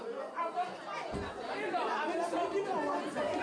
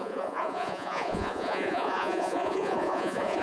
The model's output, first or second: second